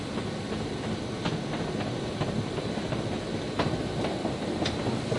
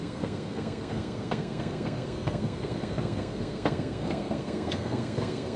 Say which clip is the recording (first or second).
first